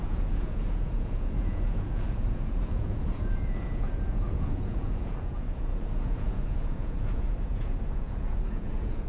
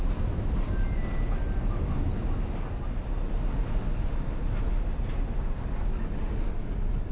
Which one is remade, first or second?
first